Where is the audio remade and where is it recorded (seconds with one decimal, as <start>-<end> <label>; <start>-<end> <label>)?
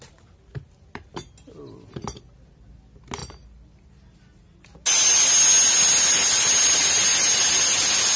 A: 0.0-8.2 recorded